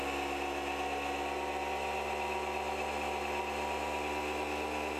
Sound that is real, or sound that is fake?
real